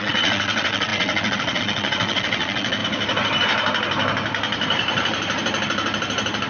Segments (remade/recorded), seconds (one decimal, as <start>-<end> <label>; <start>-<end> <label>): 0.0-2.8 remade; 2.8-6.5 recorded